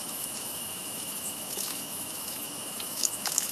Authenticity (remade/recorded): remade